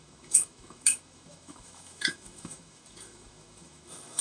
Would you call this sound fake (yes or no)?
yes